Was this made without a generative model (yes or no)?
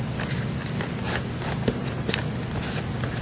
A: yes